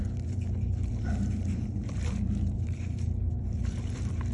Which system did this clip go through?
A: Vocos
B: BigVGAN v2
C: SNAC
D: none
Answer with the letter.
B